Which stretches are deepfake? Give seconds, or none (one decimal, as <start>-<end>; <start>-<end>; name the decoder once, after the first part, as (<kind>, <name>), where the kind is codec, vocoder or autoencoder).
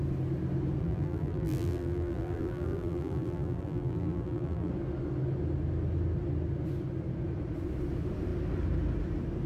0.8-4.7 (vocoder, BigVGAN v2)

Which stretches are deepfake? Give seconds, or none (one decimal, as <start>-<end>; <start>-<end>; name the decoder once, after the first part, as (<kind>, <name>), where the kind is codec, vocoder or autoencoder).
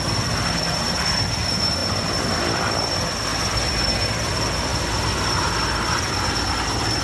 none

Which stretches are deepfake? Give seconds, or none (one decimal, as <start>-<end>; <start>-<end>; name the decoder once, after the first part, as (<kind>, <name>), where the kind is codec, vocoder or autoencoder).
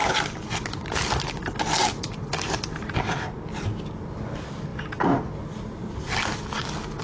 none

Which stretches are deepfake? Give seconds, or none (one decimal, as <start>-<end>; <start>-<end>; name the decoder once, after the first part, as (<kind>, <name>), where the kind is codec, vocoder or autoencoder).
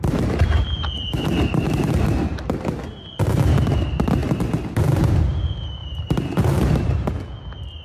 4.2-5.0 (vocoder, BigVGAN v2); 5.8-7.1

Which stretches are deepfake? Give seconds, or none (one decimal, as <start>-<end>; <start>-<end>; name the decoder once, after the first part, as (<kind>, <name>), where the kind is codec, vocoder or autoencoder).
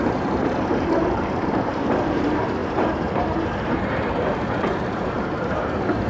0.0-6.1 (vocoder, BigVGAN v2)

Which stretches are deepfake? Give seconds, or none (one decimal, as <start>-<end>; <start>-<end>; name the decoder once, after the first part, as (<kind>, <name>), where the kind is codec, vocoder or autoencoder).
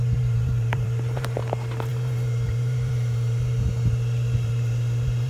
0.0-1.4 (vocoder, BigVGAN v2); 1.9-5.3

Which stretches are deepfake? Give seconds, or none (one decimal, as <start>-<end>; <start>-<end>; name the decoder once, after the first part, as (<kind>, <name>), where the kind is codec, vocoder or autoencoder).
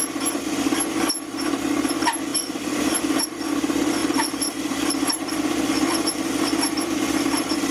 2.3-3.2 (vocoder, BigVGAN v2); 4.0-6.3